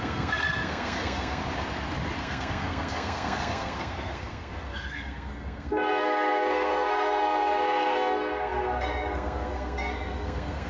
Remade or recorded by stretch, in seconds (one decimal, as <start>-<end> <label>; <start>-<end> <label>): 0.0-1.4 remade; 1.4-2.2 recorded; 2.2-10.7 remade